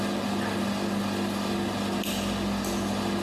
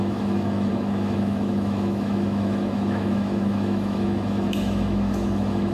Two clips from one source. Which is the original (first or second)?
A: first